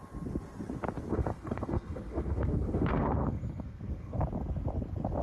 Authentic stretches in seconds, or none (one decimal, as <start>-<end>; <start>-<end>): 0.0-1.1; 4.2-5.2